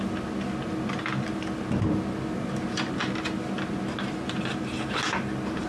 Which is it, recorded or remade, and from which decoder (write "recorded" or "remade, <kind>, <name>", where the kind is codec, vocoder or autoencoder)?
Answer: recorded